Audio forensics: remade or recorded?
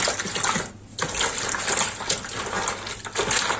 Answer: recorded